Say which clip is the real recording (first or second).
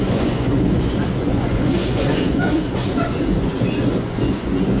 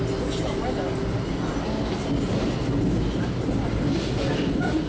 second